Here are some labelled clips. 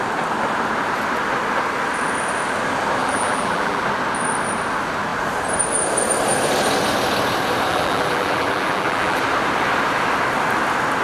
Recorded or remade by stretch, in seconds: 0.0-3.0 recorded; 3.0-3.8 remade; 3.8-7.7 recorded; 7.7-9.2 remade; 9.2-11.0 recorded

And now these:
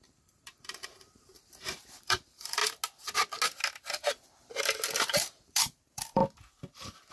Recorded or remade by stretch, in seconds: 0.0-2.6 remade; 2.6-4.4 recorded; 4.4-6.2 remade; 6.2-7.1 recorded

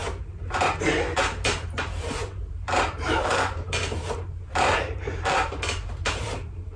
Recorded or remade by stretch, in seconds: 0.0-1.2 recorded; 1.2-6.8 remade

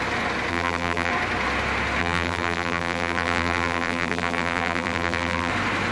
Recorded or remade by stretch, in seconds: 0.0-0.5 recorded; 0.5-1.1 remade; 1.1-2.0 recorded; 2.0-5.5 remade; 5.5-5.9 recorded

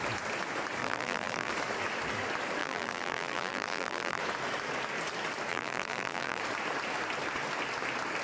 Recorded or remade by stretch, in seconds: 0.0-0.8 recorded; 0.8-1.5 remade; 1.5-2.6 recorded; 2.6-4.2 remade; 4.2-5.5 recorded; 5.5-6.4 remade; 6.4-8.2 recorded

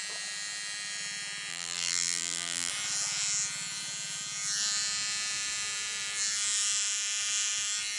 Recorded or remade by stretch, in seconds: 0.0-1.5 recorded; 1.5-2.7 remade; 2.7-8.0 recorded

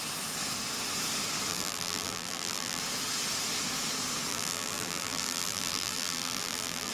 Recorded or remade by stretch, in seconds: 0.0-1.5 recorded; 1.5-2.8 remade; 2.8-4.3 recorded; 4.3-6.9 remade